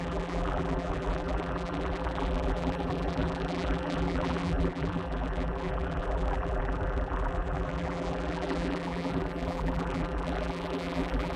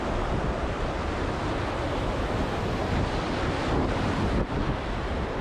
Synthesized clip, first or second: first